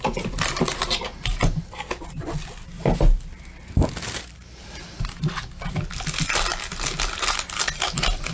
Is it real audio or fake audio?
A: real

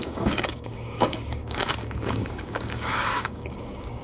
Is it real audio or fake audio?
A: fake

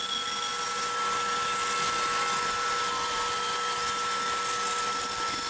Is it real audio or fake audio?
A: real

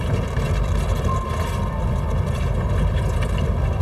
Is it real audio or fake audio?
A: fake